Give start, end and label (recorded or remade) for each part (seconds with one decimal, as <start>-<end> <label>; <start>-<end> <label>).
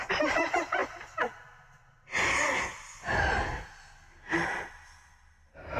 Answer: 0.0-5.8 recorded